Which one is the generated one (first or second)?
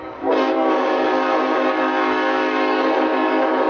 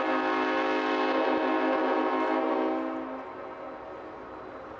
first